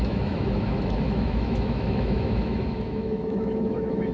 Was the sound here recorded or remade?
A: remade